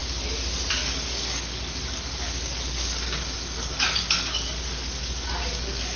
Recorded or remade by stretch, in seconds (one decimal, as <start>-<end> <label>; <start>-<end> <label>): 0.0-0.7 recorded; 0.7-6.0 remade